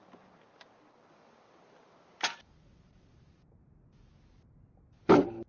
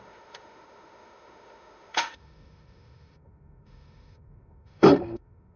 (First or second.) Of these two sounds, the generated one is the second